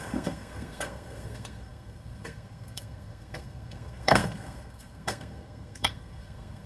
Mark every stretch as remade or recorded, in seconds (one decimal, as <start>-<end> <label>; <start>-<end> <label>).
0.0-6.7 remade